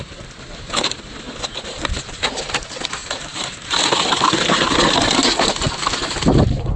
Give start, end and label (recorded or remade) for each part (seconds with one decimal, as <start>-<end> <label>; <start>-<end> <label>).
0.0-6.8 recorded